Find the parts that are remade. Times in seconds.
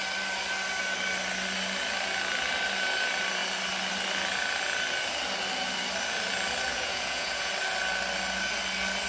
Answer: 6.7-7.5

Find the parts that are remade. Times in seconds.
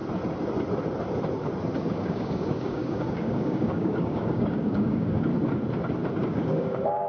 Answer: 1.9-5.3; 6.1-7.1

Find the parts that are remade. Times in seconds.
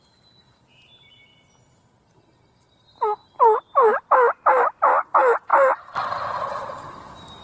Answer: none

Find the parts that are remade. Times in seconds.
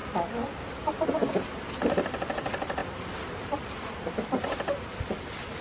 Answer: 2.8-5.6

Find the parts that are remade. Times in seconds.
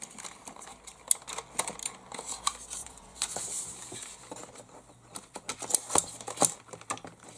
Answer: 2.8-3.4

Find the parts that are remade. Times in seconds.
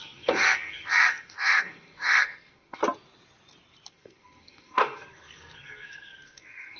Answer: 0.0-2.8; 3.9-6.8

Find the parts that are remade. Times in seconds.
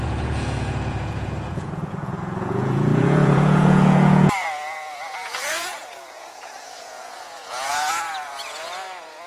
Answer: 0.0-9.3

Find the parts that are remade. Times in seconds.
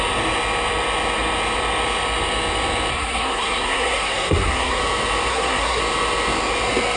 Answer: 2.9-4.8; 5.3-5.8